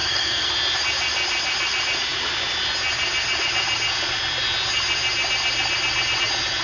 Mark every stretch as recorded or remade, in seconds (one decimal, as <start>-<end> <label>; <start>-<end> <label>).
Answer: 0.0-0.5 remade; 0.5-6.6 recorded